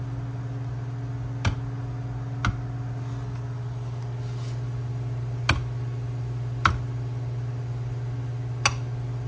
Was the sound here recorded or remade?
recorded